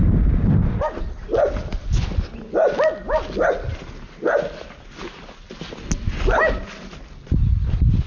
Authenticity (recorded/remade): recorded